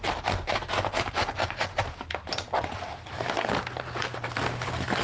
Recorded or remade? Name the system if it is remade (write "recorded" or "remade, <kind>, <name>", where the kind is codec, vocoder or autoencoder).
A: remade, vocoder, BigVGAN v2